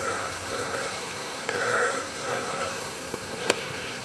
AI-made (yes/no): yes